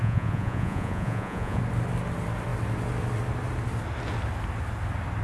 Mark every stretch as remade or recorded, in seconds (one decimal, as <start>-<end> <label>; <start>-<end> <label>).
0.0-1.6 remade; 1.6-5.2 recorded